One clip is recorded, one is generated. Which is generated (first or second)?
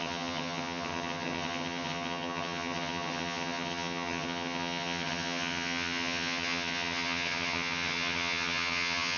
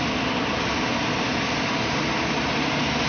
first